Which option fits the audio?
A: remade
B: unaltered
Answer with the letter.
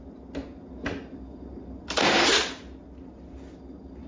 B